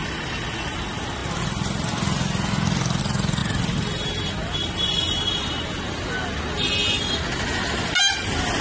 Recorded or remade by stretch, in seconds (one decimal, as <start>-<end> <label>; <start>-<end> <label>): 0.0-8.6 recorded

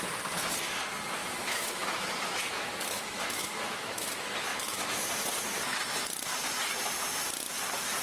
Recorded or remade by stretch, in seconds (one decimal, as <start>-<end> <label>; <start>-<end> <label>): 0.0-1.2 recorded; 1.2-4.1 remade; 4.1-4.5 recorded; 4.5-5.1 remade; 5.1-8.0 recorded

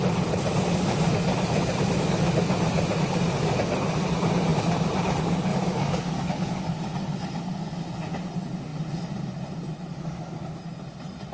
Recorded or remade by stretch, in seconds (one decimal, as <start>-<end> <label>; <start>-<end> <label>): 0.0-5.5 recorded; 5.5-6.6 remade; 6.6-9.9 recorded; 9.9-10.6 remade; 10.6-11.3 recorded

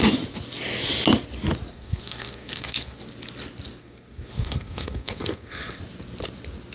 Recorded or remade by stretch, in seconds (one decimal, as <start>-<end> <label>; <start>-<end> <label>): 0.0-1.7 recorded; 1.7-3.0 remade; 3.0-3.8 recorded; 3.8-5.8 remade; 5.8-6.7 recorded